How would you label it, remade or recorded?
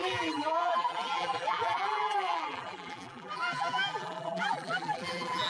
remade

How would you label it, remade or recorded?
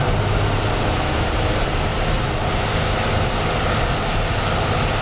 recorded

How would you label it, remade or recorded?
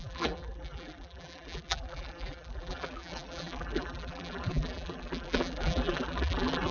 remade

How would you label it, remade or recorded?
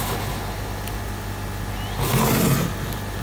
recorded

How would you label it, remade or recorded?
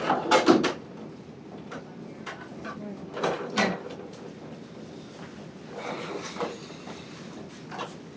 recorded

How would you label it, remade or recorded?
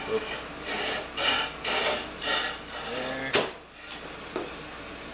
recorded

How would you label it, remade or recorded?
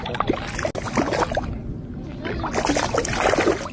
recorded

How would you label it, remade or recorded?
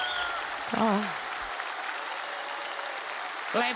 recorded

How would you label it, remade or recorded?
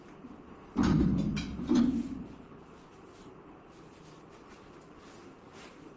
remade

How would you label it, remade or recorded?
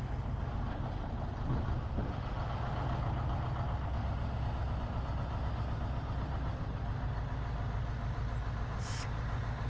recorded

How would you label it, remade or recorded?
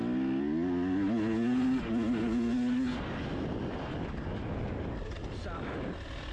recorded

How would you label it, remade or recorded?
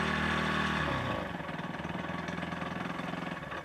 recorded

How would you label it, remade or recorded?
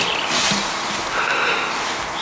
recorded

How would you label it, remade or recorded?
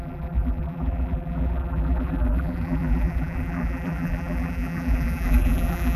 remade